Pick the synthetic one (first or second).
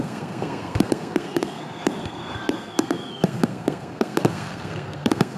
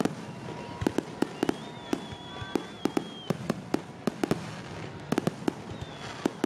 first